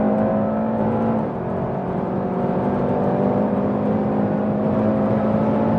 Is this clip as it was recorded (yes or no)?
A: no